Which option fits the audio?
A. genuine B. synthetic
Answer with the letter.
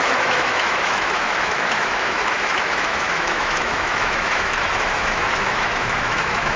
B